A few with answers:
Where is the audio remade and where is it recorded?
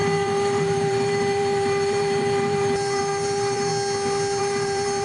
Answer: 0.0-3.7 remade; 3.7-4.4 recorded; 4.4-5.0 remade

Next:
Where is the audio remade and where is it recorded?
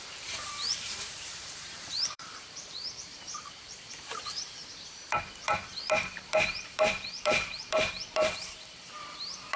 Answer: 0.0-9.6 remade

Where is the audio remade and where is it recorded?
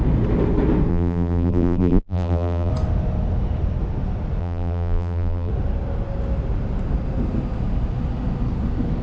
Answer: 0.0-0.9 recorded; 0.9-2.7 remade; 2.7-4.4 recorded; 4.4-5.5 remade; 5.5-9.0 recorded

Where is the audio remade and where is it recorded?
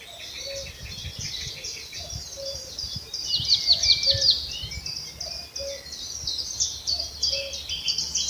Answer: 0.0-1.7 recorded; 1.7-4.1 remade; 4.1-8.3 recorded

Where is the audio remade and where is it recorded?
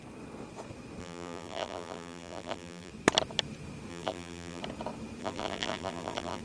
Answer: 0.0-1.0 recorded; 1.0-2.9 remade; 2.9-3.9 recorded; 3.9-4.6 remade; 4.6-5.2 recorded; 5.2-6.4 remade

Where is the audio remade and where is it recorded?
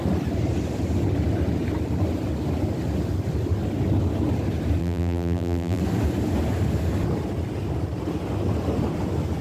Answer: 0.0-4.8 recorded; 4.8-5.8 remade; 5.8-9.4 recorded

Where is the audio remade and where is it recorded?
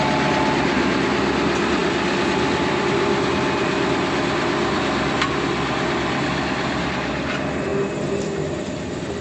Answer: 0.0-9.2 recorded